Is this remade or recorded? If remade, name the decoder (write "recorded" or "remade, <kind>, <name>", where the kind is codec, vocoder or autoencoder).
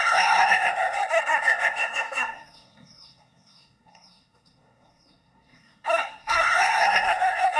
remade, codec, SNAC